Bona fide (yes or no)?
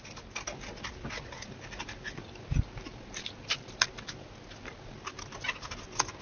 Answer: yes